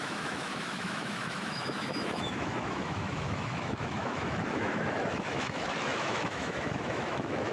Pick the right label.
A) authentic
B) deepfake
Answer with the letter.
B